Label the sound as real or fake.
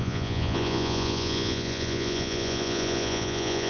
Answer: fake